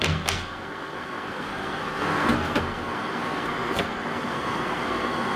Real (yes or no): no